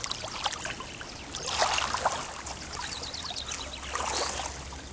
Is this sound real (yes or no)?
yes